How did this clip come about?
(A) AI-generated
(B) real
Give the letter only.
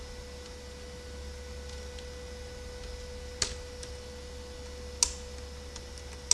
B